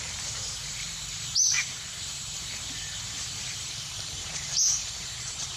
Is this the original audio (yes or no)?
no